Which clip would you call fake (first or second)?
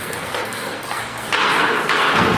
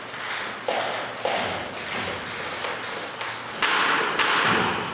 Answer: first